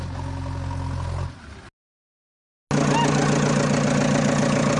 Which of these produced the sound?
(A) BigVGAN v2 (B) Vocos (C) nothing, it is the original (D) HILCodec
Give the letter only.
C